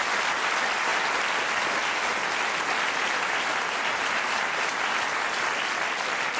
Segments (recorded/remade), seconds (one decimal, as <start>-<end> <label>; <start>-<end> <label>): 0.0-6.4 recorded